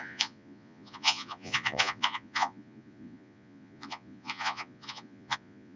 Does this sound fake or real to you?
fake